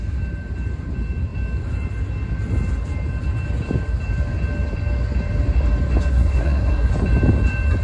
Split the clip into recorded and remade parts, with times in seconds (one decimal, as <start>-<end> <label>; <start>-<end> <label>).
0.0-6.1 recorded; 6.1-6.9 remade; 6.9-7.8 recorded